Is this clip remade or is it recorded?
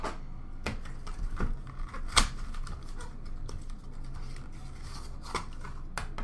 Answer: recorded